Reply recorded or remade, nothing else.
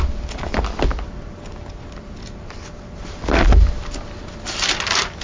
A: recorded